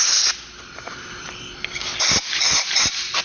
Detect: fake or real real